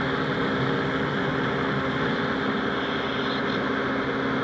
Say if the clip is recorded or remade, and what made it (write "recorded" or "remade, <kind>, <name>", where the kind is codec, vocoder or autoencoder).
recorded